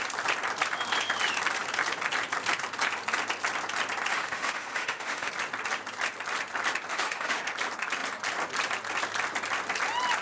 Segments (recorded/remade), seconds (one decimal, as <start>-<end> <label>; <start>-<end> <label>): 0.0-4.1 recorded; 4.1-5.3 remade; 5.3-6.9 recorded; 6.9-7.5 remade; 7.5-10.2 recorded